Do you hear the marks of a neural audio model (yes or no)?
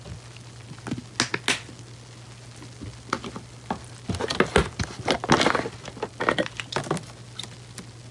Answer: no